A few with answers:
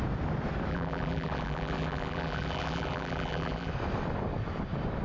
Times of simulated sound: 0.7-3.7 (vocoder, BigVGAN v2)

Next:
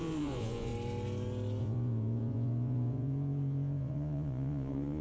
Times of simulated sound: 0.0-0.7 (vocoder, Vocos); 1.6-5.0

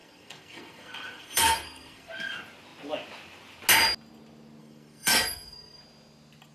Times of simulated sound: 0.0-2.1 (codec, SNAC); 4.6-5.8

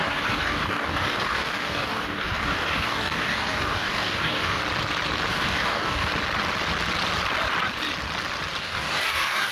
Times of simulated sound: 0.0-4.6 (codec, DAC); 5.3-6.1; 8.6-9.5